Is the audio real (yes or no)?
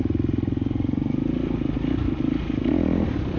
yes